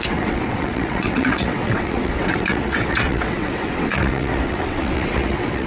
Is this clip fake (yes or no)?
yes